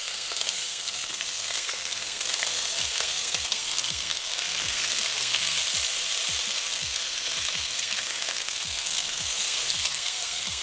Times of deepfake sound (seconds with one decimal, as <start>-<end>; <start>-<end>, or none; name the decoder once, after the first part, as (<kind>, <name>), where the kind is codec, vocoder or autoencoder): 0.0-5.6 (codec, SNAC); 6.5-10.6